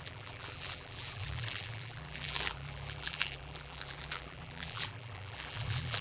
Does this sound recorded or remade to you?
remade